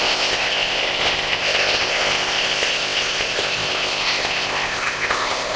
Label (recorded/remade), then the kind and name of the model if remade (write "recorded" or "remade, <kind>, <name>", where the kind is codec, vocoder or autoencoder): remade, codec, ZipCodec